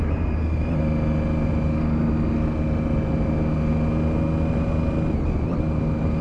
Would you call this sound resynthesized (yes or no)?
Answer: no